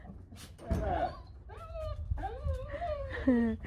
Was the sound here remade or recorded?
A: recorded